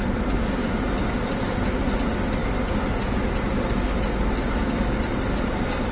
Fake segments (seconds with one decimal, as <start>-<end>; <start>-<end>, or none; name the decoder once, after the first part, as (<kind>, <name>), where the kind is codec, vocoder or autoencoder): none